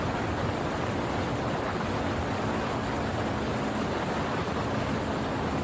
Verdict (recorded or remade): recorded